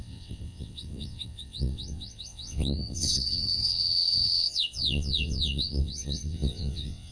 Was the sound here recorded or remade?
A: remade